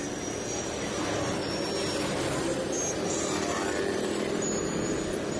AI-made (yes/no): no